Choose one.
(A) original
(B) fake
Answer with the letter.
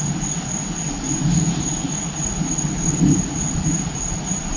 A